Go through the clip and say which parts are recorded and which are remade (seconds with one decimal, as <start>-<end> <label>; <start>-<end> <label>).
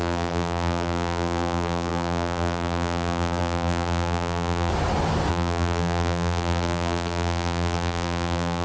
0.0-4.7 remade; 4.7-5.3 recorded; 5.3-8.6 remade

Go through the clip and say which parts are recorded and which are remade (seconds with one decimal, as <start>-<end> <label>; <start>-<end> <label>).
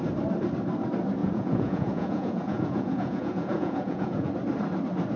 0.0-1.2 recorded; 1.2-4.3 remade; 4.3-5.2 recorded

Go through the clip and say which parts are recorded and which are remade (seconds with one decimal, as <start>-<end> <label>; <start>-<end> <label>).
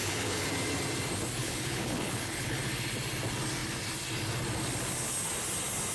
0.0-0.5 remade; 0.5-1.4 recorded; 1.4-2.6 remade; 2.6-5.9 recorded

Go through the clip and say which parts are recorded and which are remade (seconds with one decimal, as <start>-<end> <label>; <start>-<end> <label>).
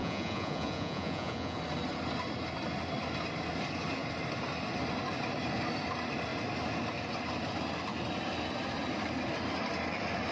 0.0-1.6 remade; 1.6-10.3 recorded